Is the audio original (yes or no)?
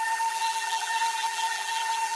no